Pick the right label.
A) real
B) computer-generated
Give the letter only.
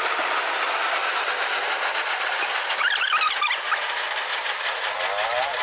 A